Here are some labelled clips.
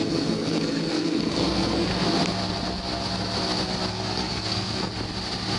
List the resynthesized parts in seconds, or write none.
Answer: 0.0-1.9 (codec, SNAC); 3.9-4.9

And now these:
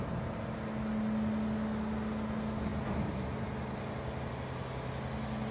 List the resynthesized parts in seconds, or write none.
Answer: none

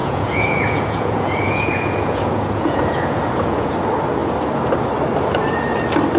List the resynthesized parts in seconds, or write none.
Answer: 0.0-3.7 (vocoder, Vocos)

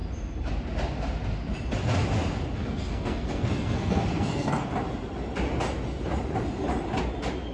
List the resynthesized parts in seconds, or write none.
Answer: 2.6-4.7 (codec, SNAC)

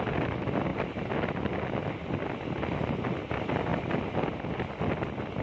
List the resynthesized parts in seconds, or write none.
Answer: none

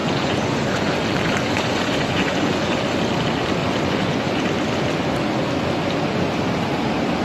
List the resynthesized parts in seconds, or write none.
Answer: 0.0-2.8 (vocoder, Vocos); 3.6-4.4

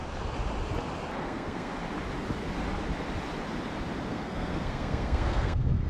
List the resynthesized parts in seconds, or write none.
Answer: 1.2-1.7 (codec, SNAC); 4.1-5.9